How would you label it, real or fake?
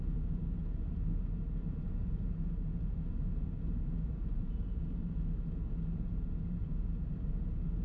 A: fake